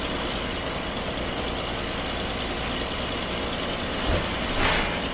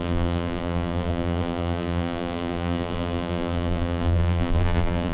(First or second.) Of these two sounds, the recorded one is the first